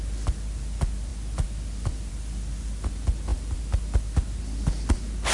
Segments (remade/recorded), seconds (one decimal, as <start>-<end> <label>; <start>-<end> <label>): 0.0-5.3 recorded